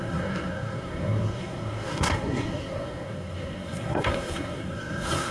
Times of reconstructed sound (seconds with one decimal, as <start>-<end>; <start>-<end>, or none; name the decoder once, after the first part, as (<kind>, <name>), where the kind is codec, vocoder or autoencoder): 0.0-5.3 (codec, SNAC)